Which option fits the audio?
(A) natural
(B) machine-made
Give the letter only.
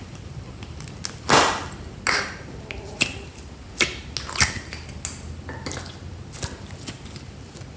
A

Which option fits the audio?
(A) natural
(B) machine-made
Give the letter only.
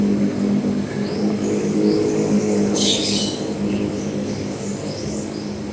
B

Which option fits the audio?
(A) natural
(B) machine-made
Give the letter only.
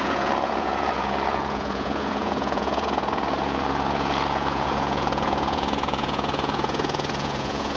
B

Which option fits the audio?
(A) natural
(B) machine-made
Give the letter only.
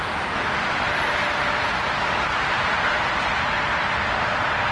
A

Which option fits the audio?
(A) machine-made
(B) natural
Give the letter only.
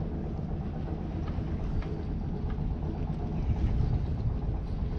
B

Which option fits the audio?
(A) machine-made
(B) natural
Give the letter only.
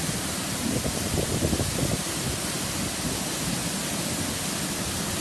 B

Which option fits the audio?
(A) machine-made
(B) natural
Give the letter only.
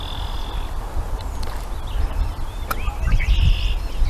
A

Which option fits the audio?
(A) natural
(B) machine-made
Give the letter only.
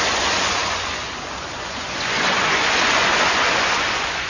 B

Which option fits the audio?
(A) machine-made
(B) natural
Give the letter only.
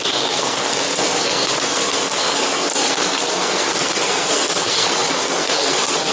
A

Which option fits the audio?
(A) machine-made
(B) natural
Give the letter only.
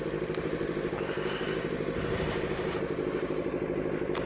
B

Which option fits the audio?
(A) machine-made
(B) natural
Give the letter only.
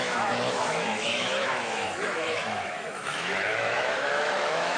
A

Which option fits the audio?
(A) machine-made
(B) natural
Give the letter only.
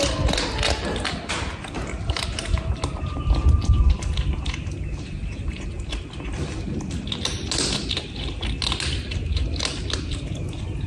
B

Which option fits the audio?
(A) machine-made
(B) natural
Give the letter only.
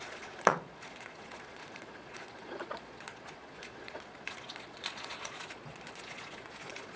A